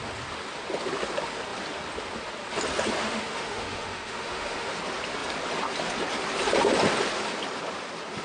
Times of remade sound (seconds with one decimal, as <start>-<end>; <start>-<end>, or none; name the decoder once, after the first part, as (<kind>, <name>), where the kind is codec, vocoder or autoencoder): 3.0-4.8 (autoencoder, DAC-VAE)